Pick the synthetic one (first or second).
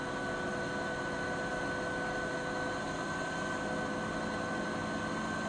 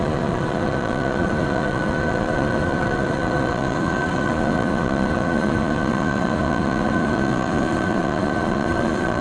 second